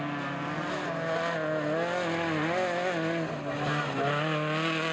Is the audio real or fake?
real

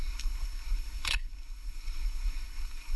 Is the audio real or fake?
fake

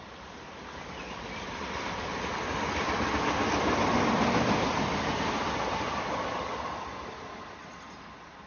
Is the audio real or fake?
real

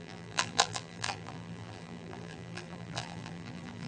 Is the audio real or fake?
fake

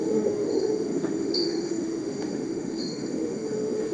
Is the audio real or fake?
fake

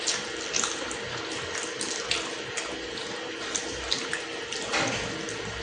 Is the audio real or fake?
real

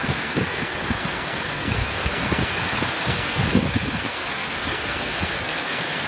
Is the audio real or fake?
fake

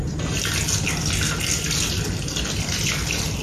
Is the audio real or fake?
real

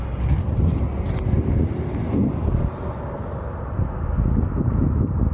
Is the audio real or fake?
real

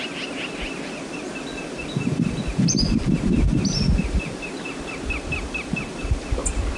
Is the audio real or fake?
real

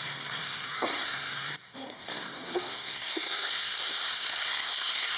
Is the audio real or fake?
fake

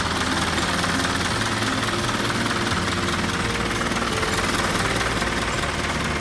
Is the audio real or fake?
real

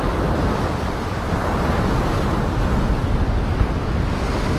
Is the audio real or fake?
real